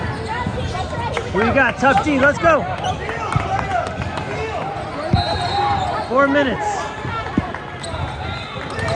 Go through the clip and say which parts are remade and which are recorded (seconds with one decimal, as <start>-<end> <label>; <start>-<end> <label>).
0.0-8.9 recorded